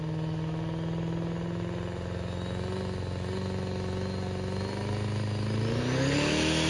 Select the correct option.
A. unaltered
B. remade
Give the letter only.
A